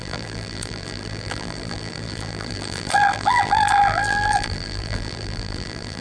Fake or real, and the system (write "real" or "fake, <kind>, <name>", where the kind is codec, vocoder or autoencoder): fake, vocoder, BigVGAN v2